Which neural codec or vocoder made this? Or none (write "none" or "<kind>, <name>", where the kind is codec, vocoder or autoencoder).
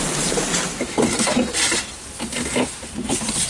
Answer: none